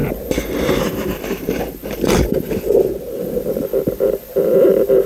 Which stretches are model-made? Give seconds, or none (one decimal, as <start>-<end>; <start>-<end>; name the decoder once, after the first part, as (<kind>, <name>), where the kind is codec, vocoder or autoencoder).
0.0-3.7 (vocoder, BigVGAN v2)